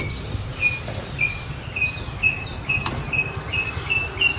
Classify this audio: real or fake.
real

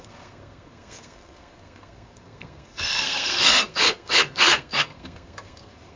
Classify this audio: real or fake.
fake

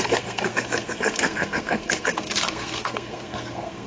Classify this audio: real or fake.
fake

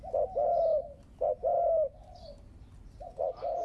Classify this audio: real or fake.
real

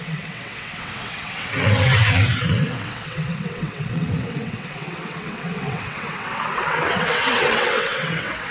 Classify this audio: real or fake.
fake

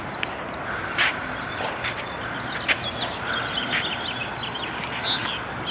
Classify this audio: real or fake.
real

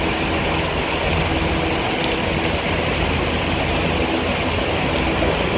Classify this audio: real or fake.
real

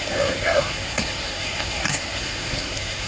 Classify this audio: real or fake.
fake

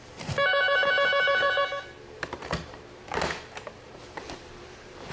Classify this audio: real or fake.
fake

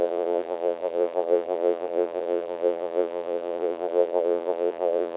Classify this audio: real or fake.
fake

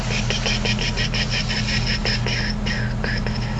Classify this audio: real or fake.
real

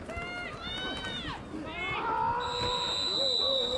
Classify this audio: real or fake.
real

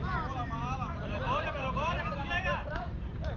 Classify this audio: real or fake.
fake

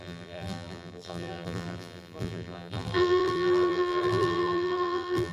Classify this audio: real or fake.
fake